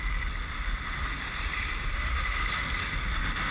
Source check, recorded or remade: recorded